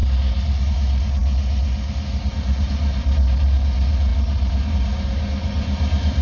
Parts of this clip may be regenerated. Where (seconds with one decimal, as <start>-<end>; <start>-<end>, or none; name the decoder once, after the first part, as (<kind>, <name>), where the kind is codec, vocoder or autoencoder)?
0.0-1.2 (vocoder, BigVGAN v2); 2.3-6.2